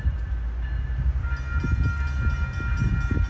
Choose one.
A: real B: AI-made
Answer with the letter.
A